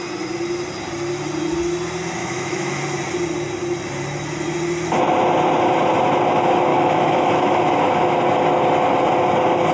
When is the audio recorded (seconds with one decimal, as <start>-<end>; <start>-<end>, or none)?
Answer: 0.0-2.2; 2.8-6.7; 7.6-9.7